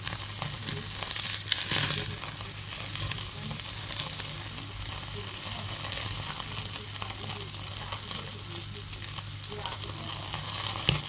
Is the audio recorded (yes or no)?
yes